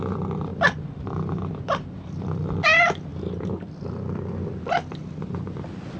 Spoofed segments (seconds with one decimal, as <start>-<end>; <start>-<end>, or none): none